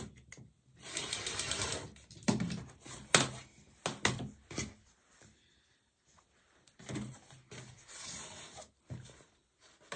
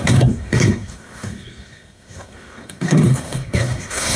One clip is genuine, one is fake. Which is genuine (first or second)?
first